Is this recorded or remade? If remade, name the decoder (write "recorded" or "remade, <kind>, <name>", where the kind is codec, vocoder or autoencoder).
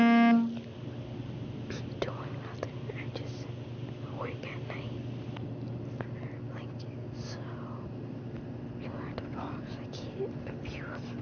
recorded